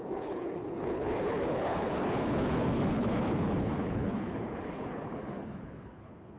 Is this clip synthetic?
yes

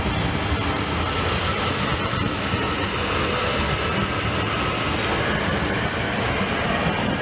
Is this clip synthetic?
no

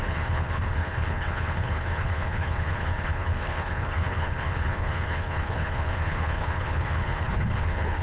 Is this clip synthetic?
yes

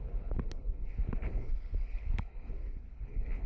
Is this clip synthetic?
yes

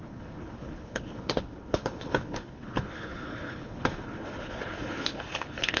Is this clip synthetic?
yes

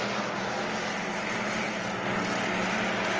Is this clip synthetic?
no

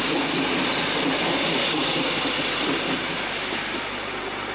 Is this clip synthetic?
no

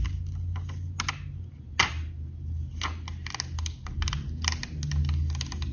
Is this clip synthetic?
no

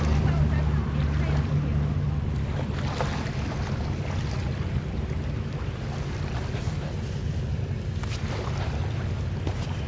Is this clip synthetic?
no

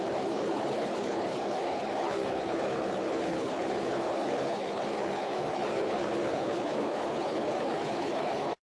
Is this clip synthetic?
yes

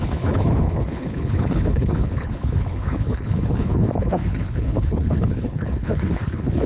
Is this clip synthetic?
yes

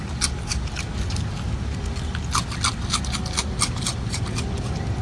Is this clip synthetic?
no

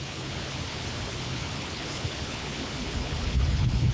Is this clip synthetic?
yes